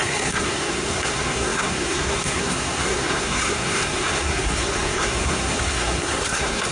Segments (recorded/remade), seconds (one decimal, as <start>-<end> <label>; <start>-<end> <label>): 0.0-6.7 remade